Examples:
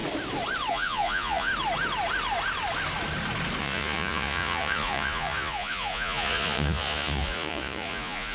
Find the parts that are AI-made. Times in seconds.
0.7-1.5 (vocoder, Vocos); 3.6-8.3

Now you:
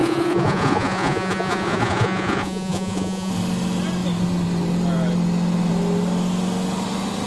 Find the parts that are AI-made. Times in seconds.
0.0-3.3 (vocoder, Vocos)